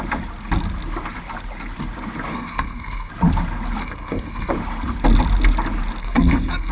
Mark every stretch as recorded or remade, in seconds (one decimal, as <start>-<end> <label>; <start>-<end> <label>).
0.0-2.3 recorded; 2.3-3.1 remade; 3.1-3.8 recorded; 3.8-4.5 remade; 4.5-6.0 recorded; 6.0-6.7 remade